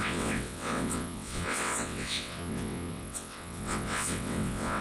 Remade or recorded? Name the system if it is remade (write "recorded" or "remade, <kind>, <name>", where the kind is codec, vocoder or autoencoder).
remade, vocoder, WaveNeXt